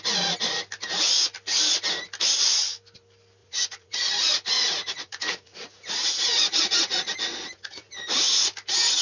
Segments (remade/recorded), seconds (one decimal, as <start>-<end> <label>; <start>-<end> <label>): 0.0-3.4 recorded; 3.4-7.9 remade; 7.9-9.0 recorded